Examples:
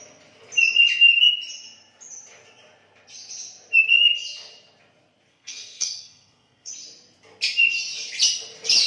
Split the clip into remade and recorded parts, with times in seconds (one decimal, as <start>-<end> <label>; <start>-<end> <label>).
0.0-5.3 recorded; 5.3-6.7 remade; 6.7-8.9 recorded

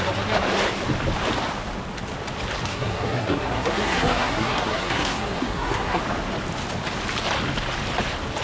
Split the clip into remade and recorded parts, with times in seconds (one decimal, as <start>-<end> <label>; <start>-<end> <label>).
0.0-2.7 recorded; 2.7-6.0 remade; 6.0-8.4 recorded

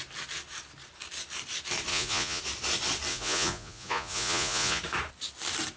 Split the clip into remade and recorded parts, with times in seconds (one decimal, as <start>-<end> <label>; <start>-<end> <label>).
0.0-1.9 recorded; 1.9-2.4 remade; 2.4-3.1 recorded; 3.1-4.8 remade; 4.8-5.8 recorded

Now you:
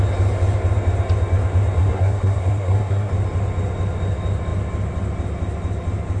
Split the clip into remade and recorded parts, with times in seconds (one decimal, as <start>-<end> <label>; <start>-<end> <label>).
0.0-1.8 recorded; 1.8-3.1 remade; 3.1-6.2 recorded